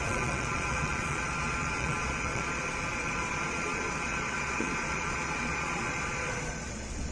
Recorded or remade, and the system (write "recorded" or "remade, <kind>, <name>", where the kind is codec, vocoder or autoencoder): remade, vocoder, Vocos